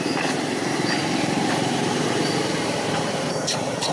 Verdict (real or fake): fake